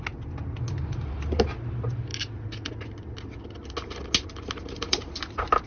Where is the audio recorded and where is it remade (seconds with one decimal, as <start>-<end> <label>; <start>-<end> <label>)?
0.0-5.7 recorded